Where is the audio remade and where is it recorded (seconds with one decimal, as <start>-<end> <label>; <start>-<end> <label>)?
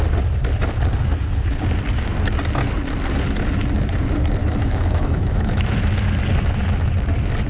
0.0-4.4 recorded; 4.4-5.8 remade; 5.8-7.5 recorded